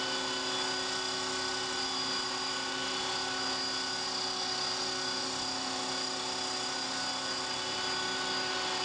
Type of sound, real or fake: real